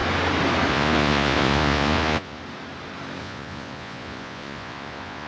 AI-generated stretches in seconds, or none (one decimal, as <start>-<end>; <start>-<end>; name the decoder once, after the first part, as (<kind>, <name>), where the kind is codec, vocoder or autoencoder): 0.7-2.4 (vocoder, Vocos); 3.2-5.3